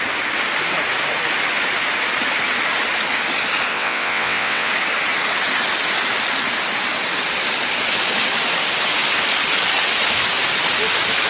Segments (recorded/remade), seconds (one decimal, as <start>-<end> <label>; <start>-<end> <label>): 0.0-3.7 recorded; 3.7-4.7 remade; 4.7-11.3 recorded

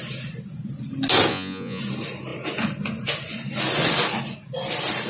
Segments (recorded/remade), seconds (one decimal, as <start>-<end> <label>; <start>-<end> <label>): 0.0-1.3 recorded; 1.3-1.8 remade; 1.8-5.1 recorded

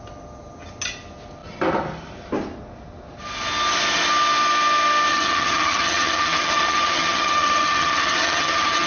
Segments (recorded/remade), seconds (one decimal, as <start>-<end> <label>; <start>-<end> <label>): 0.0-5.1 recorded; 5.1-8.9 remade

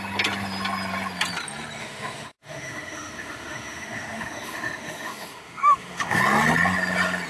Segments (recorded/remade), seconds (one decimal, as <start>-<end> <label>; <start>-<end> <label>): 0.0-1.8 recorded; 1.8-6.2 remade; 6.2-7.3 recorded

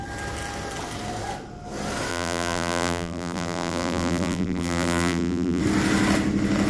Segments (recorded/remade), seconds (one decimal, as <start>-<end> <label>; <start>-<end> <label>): 0.0-2.1 recorded; 2.1-5.6 remade; 5.6-6.7 recorded

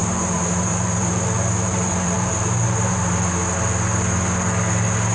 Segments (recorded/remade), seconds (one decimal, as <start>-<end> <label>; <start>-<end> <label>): 0.0-3.1 remade; 3.1-5.1 recorded